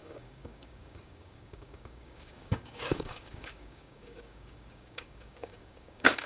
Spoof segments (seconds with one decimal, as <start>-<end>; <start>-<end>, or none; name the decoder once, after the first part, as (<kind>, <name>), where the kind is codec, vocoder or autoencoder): 0.0-6.3 (codec, DAC)